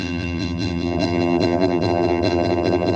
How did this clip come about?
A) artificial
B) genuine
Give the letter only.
A